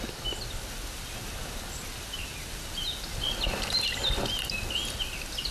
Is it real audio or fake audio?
real